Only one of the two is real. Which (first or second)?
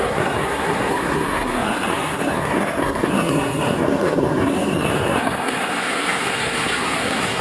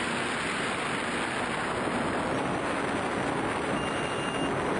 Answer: second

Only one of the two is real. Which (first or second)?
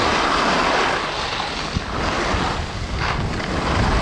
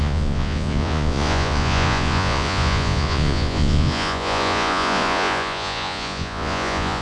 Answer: first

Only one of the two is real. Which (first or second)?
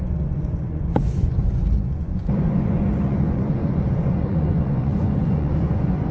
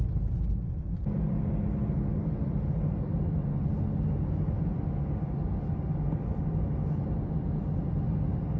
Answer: second